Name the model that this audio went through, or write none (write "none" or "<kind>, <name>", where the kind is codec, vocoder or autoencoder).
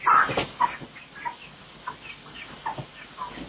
none